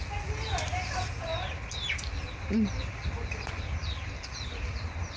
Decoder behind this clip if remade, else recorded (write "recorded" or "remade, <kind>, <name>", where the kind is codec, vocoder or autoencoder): recorded